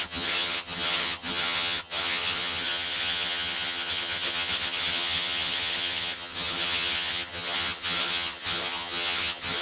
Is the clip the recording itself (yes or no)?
no